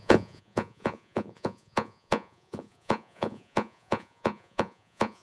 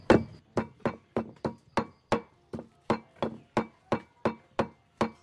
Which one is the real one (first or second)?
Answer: second